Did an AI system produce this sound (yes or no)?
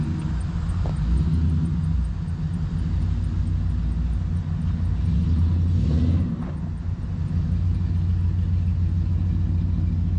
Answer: no